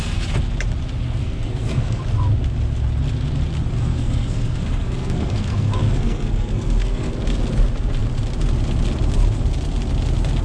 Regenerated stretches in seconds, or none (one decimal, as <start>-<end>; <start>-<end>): 1.2-2.0; 3.8-7.1